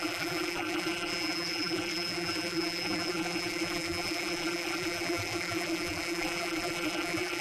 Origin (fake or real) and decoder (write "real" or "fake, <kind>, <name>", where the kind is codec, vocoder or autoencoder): fake, vocoder, BigVGAN v2